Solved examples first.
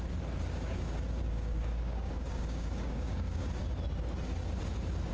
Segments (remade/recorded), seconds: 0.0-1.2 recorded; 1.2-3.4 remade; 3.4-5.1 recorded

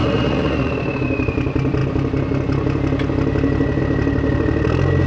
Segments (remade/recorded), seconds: 0.0-0.7 remade; 0.7-5.1 recorded

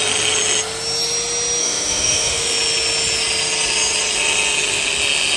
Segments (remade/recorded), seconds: 0.0-1.6 recorded; 1.6-2.4 remade; 2.4-5.4 recorded

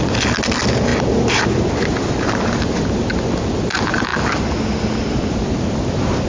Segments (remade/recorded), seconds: 0.0-6.3 recorded

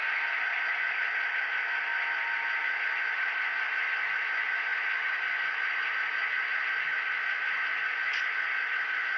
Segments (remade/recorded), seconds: 0.0-9.2 recorded